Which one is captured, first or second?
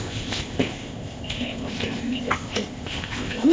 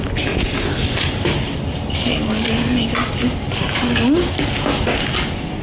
second